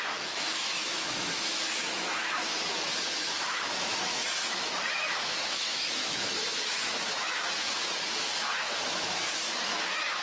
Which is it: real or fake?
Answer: fake